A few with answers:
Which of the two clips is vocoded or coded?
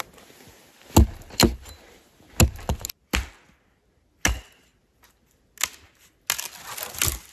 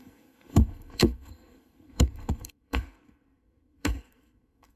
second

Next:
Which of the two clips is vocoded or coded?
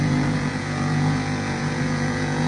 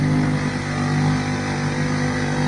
first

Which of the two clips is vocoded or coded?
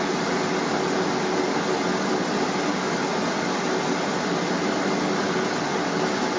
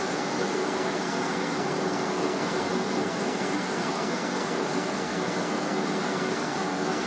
second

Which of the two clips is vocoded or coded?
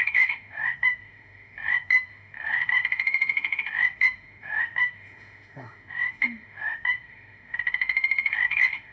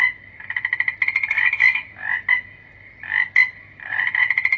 first